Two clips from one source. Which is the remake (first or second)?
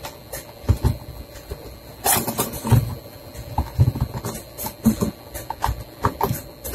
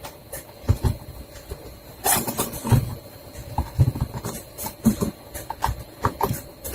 second